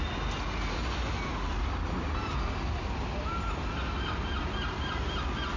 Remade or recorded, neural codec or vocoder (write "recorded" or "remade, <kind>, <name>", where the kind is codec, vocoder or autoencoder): recorded